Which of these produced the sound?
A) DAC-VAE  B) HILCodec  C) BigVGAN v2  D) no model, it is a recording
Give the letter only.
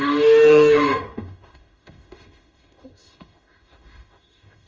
A